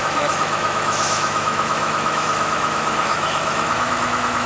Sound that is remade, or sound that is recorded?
remade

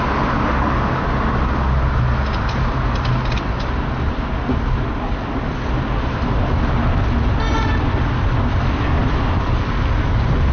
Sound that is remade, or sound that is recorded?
recorded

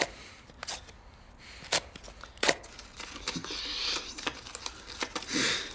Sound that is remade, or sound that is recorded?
recorded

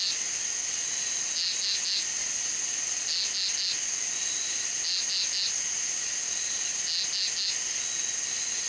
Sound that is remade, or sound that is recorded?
recorded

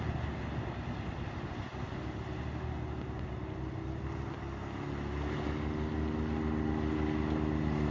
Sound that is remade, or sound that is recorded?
recorded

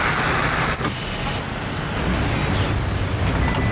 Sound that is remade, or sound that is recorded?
recorded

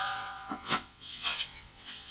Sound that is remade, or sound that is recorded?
remade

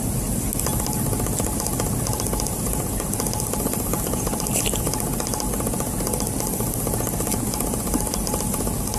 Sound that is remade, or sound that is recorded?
recorded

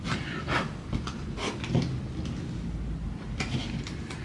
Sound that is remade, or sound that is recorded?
recorded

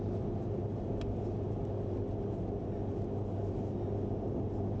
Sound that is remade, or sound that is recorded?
recorded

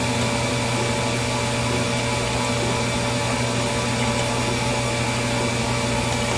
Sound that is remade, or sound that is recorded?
recorded